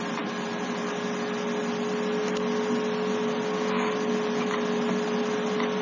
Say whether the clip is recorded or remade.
recorded